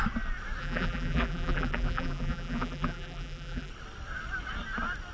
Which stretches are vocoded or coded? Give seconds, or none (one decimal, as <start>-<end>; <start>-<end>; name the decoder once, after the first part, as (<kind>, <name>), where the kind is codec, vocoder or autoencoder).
0.6-3.7 (vocoder, BigVGAN v2)